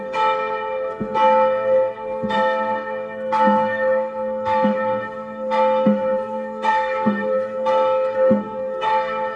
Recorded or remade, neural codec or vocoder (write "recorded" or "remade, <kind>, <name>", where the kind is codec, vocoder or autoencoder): remade, codec, SNAC